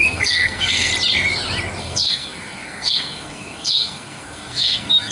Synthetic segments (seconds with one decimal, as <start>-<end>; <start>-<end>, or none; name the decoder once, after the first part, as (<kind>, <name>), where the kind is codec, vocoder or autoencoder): 0.0-0.9 (codec, SNAC); 1.8-5.1